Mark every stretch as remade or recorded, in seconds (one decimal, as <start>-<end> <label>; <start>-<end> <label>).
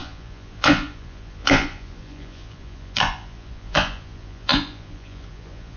0.0-5.8 remade